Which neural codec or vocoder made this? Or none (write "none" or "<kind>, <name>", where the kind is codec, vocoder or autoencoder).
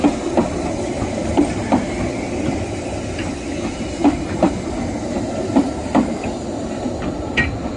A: none